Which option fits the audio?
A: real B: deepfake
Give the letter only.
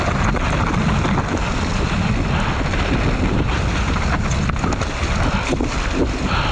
A